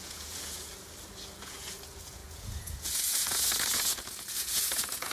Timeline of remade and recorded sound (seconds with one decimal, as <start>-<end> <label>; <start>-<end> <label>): 0.0-0.7 remade; 0.7-1.4 recorded; 1.4-5.1 remade